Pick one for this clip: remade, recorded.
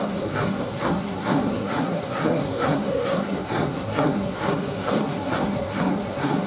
remade